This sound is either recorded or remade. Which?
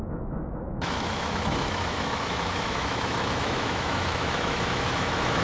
remade